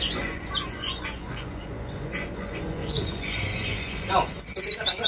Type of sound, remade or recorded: remade